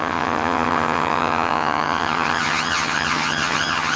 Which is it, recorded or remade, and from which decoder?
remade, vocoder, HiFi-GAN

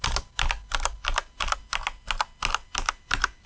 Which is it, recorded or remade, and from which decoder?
recorded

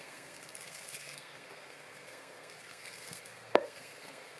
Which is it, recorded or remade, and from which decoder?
remade, codec, SNAC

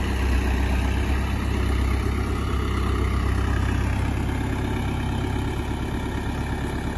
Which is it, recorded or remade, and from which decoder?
recorded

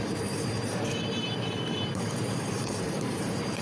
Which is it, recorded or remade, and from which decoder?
remade, vocoder, BigVGAN v2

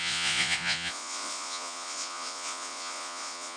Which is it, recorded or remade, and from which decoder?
remade, vocoder, Vocos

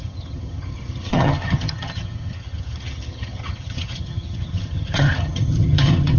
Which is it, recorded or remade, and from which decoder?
remade, vocoder, HiFi-GAN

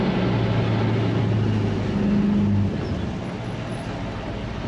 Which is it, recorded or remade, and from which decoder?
recorded